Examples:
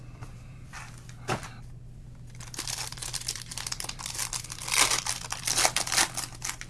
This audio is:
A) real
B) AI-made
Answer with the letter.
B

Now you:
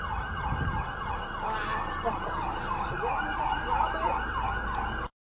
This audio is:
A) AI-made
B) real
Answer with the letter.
B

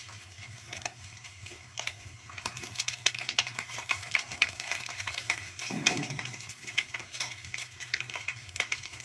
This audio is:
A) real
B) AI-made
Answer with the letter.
B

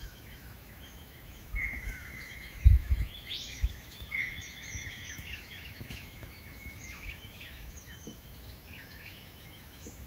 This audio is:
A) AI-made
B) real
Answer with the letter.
A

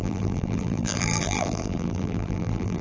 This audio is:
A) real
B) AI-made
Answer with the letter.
B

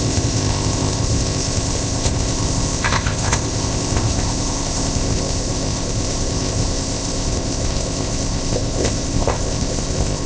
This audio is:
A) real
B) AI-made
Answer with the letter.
B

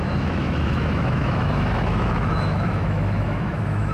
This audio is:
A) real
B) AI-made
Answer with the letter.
B